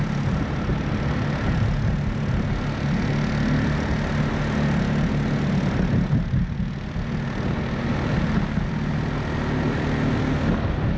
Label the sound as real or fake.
real